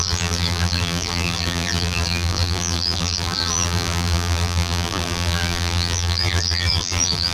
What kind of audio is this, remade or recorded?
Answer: remade